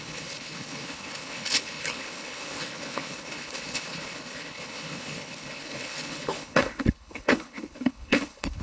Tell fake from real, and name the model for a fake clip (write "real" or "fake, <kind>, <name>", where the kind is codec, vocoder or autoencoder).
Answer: fake, codec, HILCodec